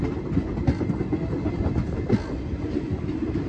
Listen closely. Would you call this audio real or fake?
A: real